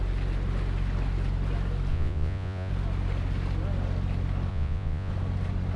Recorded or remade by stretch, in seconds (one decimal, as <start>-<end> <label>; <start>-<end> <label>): 0.0-1.9 recorded; 1.9-2.7 remade; 2.7-4.5 recorded; 4.5-5.1 remade; 5.1-5.8 recorded